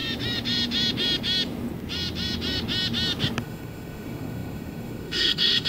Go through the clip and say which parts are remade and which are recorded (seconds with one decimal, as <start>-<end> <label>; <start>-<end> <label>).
0.0-3.4 recorded; 3.4-5.7 remade

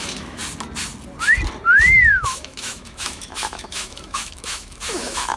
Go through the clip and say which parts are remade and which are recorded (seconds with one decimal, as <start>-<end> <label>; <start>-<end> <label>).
0.0-0.4 remade; 0.4-2.2 recorded; 2.2-5.4 remade